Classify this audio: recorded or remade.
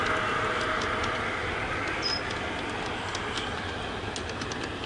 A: recorded